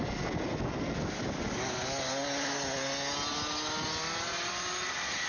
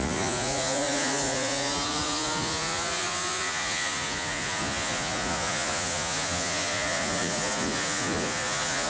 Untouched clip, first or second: first